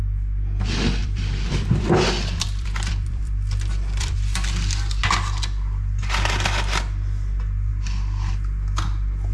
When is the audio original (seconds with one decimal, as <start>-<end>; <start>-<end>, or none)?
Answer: 0.0-1.0; 5.0-9.3